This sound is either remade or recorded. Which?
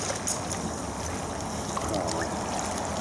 recorded